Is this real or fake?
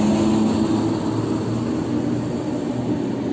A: real